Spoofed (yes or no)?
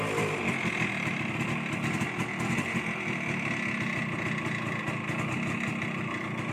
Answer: no